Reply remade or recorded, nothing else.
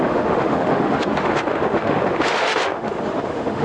remade